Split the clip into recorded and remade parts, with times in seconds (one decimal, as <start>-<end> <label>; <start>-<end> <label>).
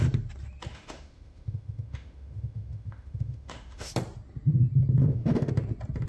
0.0-0.7 recorded; 0.7-3.9 remade; 3.9-5.0 recorded; 5.0-5.5 remade; 5.5-6.1 recorded